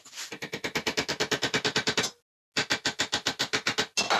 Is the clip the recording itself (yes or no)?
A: yes